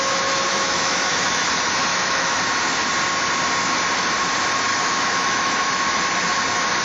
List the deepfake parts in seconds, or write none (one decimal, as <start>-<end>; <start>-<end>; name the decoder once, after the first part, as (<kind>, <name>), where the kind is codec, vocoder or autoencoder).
0.5-1.5 (autoencoder, DAC-VAE); 1.9-2.4; 4.7-6.0